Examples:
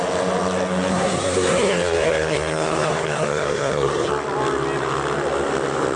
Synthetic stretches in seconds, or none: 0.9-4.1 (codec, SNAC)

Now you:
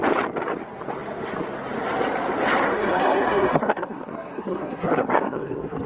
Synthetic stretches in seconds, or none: 2.7-5.9 (codec, SNAC)

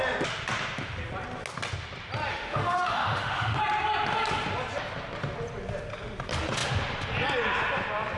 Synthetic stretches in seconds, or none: 2.3-3.6 (autoencoder, DAC-VAE)

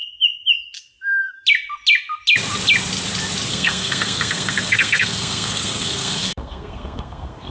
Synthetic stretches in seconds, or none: 3.5-7.5 (codec, SNAC)

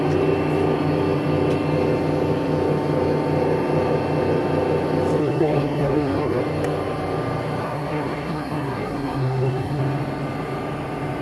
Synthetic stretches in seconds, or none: 5.2-6.4 (codec, SNAC); 7.6-9.8

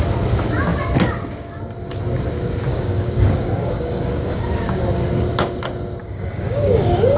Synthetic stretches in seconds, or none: 2.7-4.5 (codec, DAC); 6.0-7.2